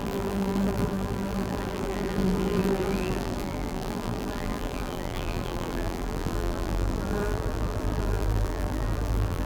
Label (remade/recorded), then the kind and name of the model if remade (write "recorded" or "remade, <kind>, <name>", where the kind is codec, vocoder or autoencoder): remade, vocoder, BigVGAN v2